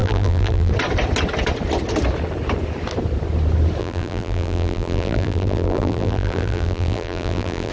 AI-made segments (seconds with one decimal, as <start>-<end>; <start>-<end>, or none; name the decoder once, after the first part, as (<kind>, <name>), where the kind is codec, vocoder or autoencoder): 0.0-0.7 (vocoder, BigVGAN v2); 3.8-7.7